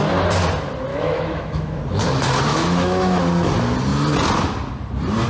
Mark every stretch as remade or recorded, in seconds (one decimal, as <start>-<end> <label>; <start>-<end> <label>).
0.0-0.9 recorded; 0.9-1.8 remade; 1.8-2.5 recorded; 2.5-3.2 remade; 3.2-5.3 recorded